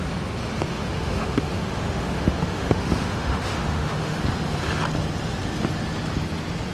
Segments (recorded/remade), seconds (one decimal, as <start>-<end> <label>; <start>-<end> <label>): 0.0-0.7 recorded; 0.7-4.2 remade; 4.2-6.7 recorded